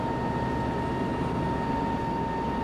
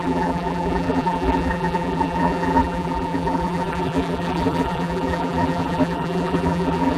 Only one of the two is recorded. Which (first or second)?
first